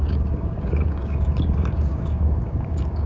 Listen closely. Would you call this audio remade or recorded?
remade